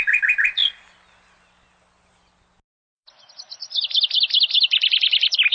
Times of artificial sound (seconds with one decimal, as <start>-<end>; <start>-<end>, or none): none